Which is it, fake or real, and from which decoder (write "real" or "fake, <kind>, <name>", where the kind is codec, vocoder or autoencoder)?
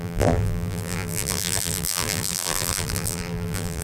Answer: fake, vocoder, BigVGAN v2